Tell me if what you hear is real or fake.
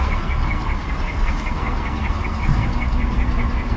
fake